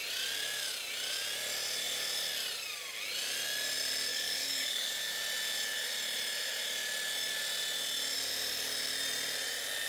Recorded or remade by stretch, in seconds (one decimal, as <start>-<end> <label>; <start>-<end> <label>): 0.0-4.1 recorded; 4.1-5.2 remade; 5.2-9.9 recorded